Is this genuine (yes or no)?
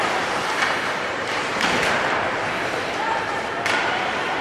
no